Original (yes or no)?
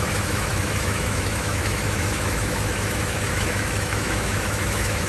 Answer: no